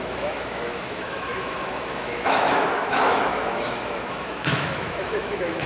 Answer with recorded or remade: remade